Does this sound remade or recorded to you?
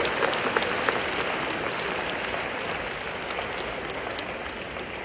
recorded